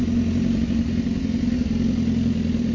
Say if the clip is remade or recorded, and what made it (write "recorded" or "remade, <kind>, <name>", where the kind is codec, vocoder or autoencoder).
recorded